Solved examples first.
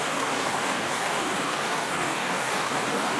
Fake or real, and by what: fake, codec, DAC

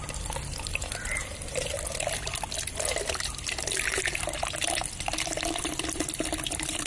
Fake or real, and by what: real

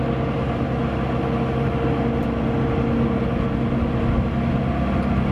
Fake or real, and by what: real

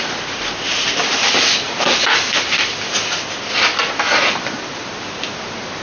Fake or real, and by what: real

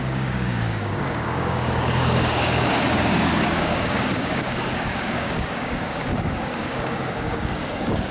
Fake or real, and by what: fake, codec, DAC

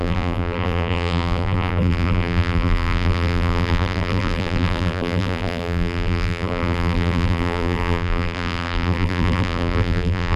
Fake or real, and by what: fake, vocoder, BigVGAN v2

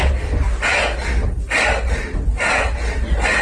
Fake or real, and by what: real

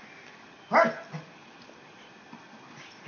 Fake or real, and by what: real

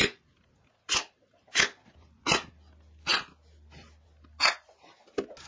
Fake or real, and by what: real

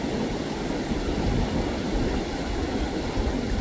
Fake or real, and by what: real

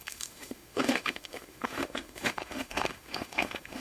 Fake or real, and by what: fake, autoencoder, DAC-VAE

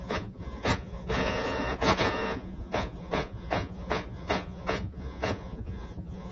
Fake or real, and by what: fake, vocoder, Vocos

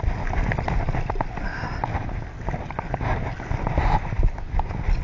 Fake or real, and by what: real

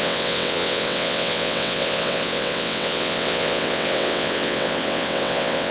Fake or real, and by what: fake, vocoder, WaveNeXt